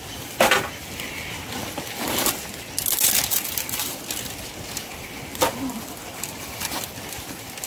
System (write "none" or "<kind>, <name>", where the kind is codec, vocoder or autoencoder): none